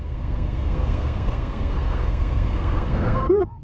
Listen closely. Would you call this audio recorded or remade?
remade